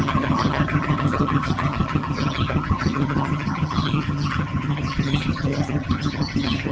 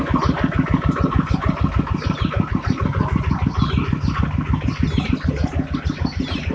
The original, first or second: second